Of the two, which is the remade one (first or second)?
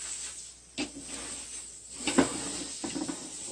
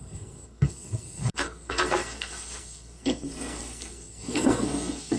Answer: second